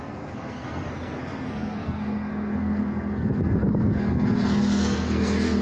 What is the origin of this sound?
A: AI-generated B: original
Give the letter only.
A